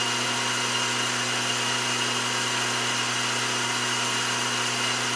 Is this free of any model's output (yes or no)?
yes